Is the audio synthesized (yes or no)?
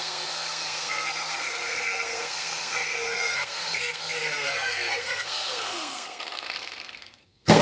yes